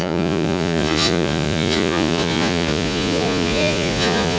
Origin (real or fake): fake